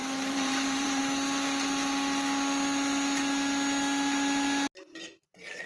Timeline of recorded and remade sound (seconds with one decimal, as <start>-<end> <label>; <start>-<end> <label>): 0.0-1.0 remade; 1.0-5.7 recorded